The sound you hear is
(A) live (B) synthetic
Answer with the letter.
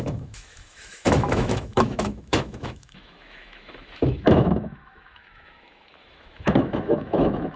B